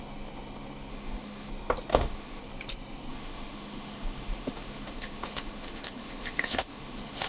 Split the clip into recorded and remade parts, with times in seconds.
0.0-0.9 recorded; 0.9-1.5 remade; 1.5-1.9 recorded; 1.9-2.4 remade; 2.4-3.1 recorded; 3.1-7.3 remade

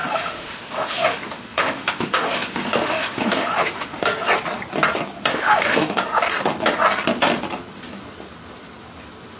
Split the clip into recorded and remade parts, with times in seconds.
0.0-4.3 remade; 4.3-5.3 recorded; 5.3-6.0 remade; 6.0-9.4 recorded

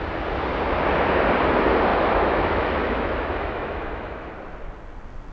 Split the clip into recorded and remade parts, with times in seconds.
0.0-1.9 recorded; 1.9-4.3 remade; 4.3-5.3 recorded

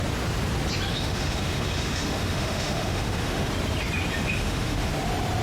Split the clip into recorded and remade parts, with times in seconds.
0.0-0.9 recorded; 0.9-3.5 remade; 3.5-4.1 recorded; 4.1-4.9 remade; 4.9-5.4 recorded

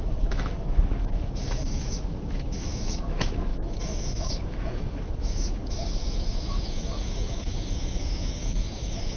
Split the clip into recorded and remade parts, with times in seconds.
0.0-9.2 remade

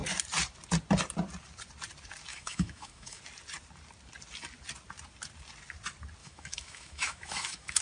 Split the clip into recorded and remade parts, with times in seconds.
0.0-2.3 recorded; 2.3-3.2 remade; 3.2-6.2 recorded; 6.2-7.8 remade

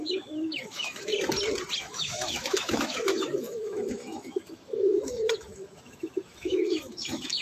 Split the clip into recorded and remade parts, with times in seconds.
0.0-1.1 remade; 1.1-1.8 recorded; 1.8-7.4 remade

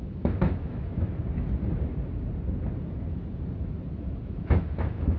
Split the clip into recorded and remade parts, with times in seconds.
0.0-1.1 remade; 1.1-4.2 recorded; 4.2-5.2 remade